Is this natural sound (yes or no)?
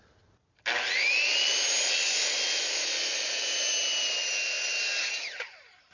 yes